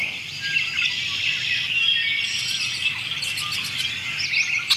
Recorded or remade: recorded